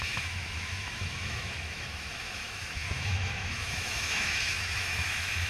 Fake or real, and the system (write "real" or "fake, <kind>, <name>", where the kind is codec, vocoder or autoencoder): fake, autoencoder, DAC-VAE